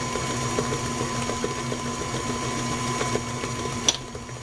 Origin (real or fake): real